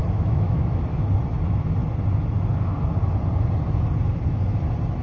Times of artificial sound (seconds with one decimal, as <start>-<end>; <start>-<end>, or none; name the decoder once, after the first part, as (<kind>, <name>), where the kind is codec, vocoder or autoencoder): 0.0-0.8 (autoencoder, DAC-VAE)